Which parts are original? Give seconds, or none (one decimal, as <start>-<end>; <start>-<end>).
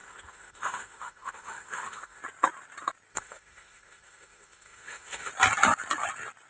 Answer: 2.2-3.1; 5.3-6.5